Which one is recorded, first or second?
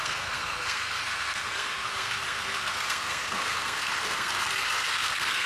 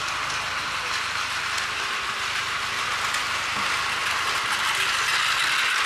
second